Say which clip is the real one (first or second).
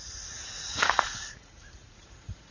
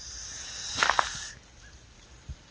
second